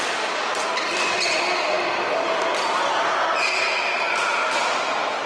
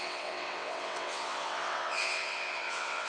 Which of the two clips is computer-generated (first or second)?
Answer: second